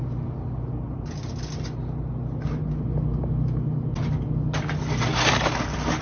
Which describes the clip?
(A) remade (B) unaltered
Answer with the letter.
B